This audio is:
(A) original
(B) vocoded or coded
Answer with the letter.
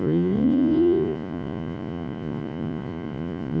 B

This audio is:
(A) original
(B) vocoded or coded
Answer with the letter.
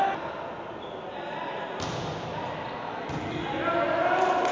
A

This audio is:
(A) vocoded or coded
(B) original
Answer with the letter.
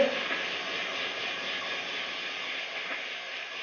B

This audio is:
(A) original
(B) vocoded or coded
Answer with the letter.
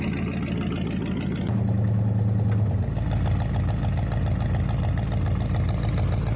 A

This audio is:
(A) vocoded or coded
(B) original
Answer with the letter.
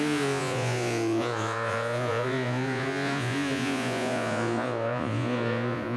A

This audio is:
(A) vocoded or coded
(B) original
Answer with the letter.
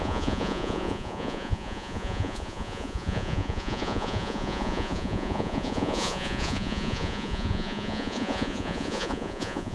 A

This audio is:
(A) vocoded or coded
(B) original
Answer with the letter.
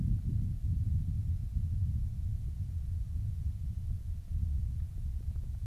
A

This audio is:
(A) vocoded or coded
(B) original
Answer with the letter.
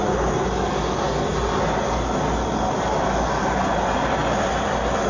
B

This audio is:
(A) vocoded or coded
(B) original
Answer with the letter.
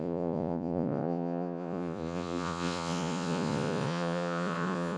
A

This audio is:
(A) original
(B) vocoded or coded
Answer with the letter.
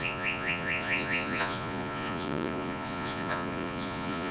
B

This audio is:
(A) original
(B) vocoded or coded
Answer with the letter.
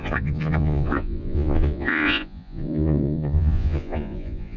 B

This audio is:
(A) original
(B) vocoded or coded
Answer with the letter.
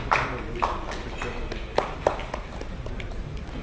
A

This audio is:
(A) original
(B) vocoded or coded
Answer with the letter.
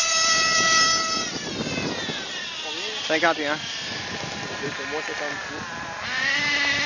A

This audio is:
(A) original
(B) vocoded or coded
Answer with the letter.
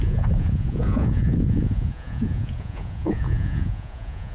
B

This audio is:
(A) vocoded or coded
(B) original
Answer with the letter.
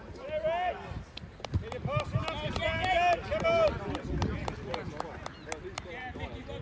B